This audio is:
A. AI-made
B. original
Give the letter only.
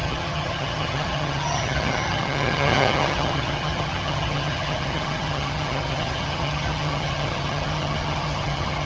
A